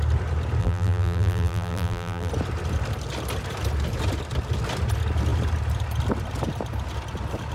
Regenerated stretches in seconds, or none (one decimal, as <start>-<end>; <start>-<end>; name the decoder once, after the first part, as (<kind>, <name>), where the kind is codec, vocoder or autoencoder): 0.6-2.3 (vocoder, BigVGAN v2)